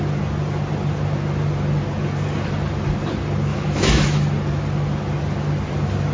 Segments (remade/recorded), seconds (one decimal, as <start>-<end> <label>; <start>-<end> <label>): 0.0-3.5 recorded; 3.5-4.2 remade; 4.2-6.1 recorded